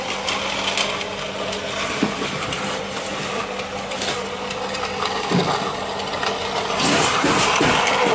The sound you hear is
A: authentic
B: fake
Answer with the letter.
A